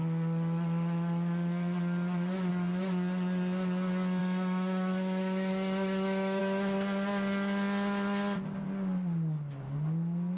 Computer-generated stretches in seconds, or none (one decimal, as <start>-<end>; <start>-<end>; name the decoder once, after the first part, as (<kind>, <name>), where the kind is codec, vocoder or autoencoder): 4.2-6.4 (autoencoder, DAC-VAE)